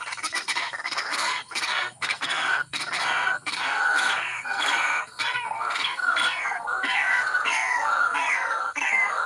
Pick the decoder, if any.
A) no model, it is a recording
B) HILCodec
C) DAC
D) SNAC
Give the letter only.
D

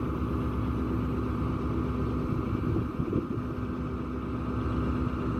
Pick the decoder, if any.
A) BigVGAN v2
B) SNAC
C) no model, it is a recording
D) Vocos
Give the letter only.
C